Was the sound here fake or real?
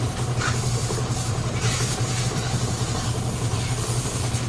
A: fake